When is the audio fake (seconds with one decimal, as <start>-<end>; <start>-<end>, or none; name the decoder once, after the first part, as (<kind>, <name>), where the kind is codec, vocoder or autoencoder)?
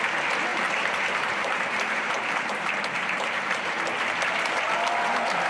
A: 0.5-3.8 (vocoder, BigVGAN v2)